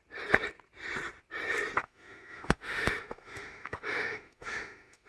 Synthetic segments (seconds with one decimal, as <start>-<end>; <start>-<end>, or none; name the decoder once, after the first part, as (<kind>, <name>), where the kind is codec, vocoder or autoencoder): 1.8-5.1 (autoencoder, DAC-VAE)